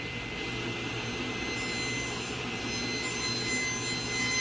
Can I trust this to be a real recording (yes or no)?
yes